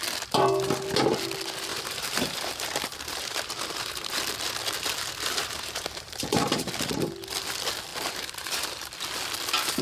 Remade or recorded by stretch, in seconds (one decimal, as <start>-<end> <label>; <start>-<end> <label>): 0.0-1.7 recorded; 1.7-4.2 remade; 4.2-5.4 recorded; 5.4-6.7 remade; 6.7-7.9 recorded; 7.9-8.9 remade; 8.9-9.8 recorded